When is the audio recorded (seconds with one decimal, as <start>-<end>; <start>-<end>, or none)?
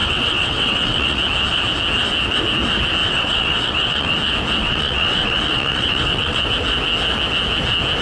1.2-3.0; 4.1-4.6; 6.4-8.0